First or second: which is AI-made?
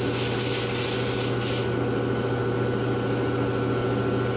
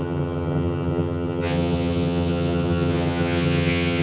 second